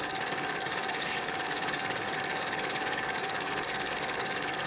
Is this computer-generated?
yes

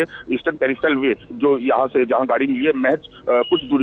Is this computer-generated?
yes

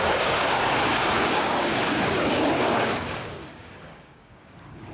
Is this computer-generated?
yes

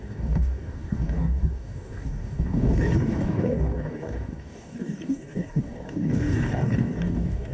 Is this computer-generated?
yes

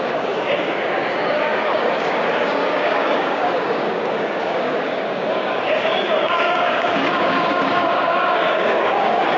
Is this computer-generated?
yes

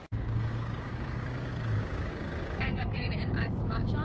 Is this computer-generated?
yes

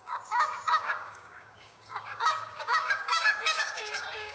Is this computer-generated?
yes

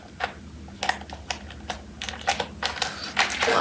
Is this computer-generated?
no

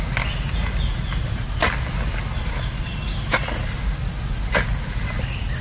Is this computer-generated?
no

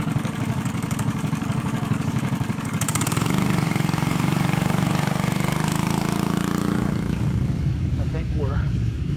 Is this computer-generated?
yes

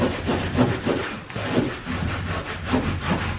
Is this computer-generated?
no